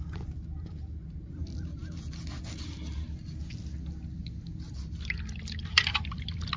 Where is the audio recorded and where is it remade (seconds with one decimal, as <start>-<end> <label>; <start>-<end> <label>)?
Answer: 0.0-6.6 recorded